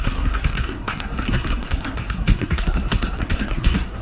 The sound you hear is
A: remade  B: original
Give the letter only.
A